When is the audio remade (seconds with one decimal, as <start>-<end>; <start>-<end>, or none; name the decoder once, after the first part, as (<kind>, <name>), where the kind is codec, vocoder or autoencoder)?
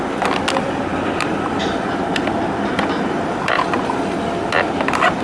0.9-4.0 (vocoder, BigVGAN v2)